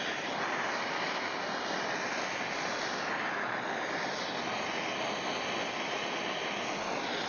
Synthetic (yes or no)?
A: no